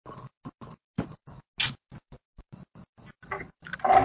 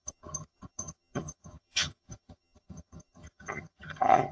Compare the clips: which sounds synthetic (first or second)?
second